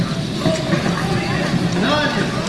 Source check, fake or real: real